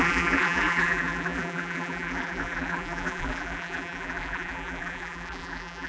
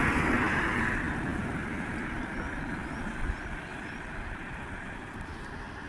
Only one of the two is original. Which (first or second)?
second